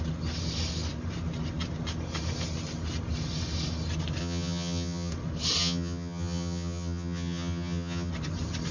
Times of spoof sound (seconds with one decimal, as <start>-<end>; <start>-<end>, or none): 4.2-5.1; 5.6-8.1